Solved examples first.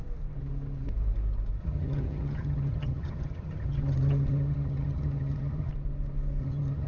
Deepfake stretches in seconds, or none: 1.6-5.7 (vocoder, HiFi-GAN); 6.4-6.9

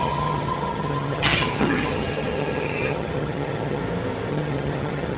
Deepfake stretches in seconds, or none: 0.0-3.8 (vocoder, HiFi-GAN); 4.3-5.2

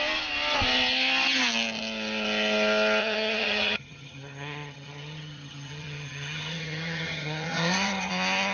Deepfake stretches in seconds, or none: 3.0-8.1 (vocoder, HiFi-GAN)

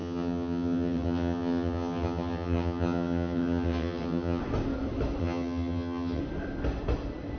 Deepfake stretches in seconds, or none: 0.0-4.4 (vocoder, HiFi-GAN); 5.2-6.2

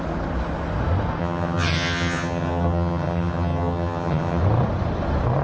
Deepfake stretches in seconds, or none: 1.2-4.4 (vocoder, HiFi-GAN)

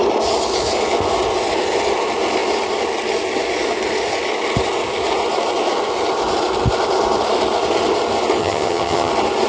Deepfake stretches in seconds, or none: 8.4-9.1 (vocoder, HiFi-GAN)